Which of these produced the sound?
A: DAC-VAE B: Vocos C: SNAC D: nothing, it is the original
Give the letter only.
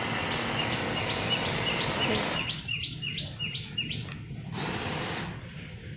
D